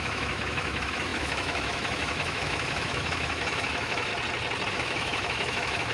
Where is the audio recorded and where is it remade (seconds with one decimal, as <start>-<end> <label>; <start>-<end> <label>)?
0.0-4.1 remade; 4.1-4.7 recorded; 4.7-5.9 remade